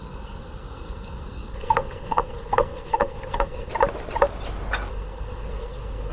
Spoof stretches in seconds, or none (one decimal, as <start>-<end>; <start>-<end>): 0.0-3.7; 4.9-6.1